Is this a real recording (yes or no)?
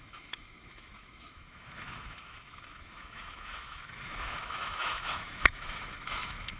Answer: no